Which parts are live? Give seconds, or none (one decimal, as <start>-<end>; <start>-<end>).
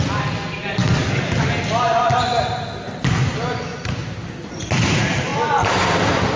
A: 0.0-6.4